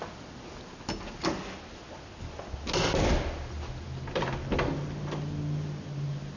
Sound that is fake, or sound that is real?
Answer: real